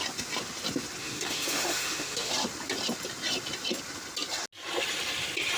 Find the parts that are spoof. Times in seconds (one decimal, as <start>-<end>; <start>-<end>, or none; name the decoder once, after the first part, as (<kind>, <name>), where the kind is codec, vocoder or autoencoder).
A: 1.0-2.3 (autoencoder, DAC-VAE)